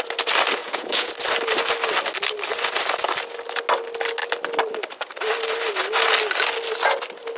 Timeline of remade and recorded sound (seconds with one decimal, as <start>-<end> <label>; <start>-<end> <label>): 0.0-0.6 recorded; 0.6-1.1 remade; 1.1-7.4 recorded